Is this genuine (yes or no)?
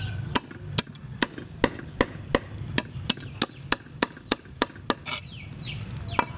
yes